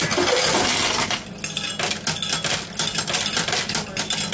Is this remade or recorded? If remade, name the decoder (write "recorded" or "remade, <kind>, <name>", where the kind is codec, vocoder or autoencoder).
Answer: recorded